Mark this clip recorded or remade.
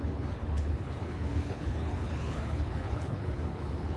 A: remade